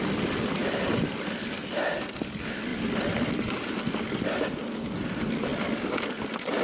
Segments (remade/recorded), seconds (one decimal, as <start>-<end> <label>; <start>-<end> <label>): 0.0-6.6 recorded